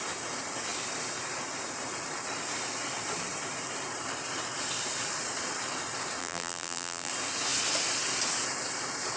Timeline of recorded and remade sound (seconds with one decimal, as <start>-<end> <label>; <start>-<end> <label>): 0.0-6.2 recorded; 6.2-7.1 remade; 7.1-9.2 recorded